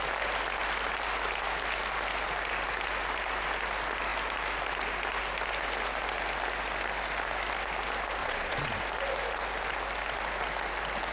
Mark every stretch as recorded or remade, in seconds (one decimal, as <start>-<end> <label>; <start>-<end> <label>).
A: 0.0-8.2 recorded; 8.2-8.8 remade; 8.8-11.1 recorded